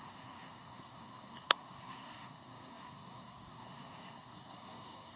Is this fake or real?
fake